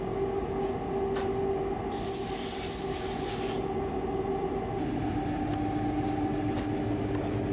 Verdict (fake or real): real